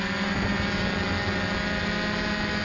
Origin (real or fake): real